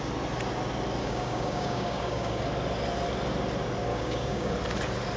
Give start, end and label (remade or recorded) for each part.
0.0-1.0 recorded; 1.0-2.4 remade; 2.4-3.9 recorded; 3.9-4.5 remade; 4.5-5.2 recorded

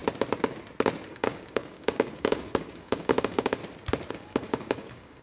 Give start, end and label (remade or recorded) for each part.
0.0-1.1 recorded; 1.1-3.6 remade; 3.6-4.1 recorded; 4.1-5.2 remade

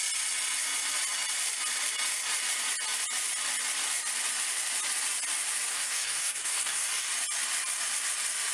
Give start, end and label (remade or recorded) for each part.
0.0-5.7 recorded; 5.7-7.1 remade; 7.1-8.5 recorded

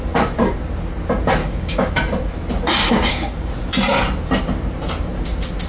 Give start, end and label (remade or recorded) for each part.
0.0-1.4 recorded; 1.4-1.9 remade; 1.9-2.8 recorded; 2.8-3.5 remade; 3.5-5.7 recorded

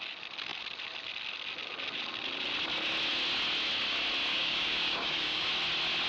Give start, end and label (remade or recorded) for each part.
0.0-4.3 recorded; 4.3-5.5 remade; 5.5-6.1 recorded

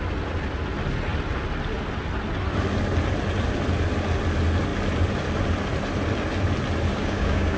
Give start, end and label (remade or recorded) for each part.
0.0-6.9 recorded; 6.9-7.6 remade

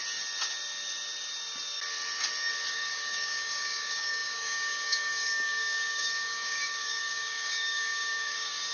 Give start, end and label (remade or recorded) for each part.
0.0-2.7 recorded; 2.7-8.7 remade

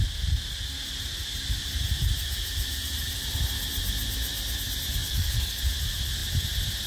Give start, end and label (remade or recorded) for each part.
0.0-5.0 recorded; 5.0-5.6 remade; 5.6-6.9 recorded